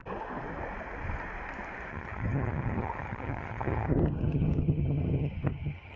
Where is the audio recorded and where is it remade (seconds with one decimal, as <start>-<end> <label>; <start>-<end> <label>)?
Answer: 0.0-1.9 recorded; 1.9-6.0 remade